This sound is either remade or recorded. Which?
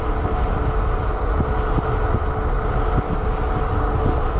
recorded